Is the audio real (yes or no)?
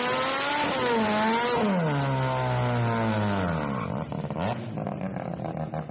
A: yes